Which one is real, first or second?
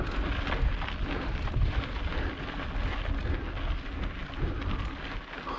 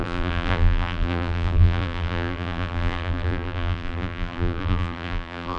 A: first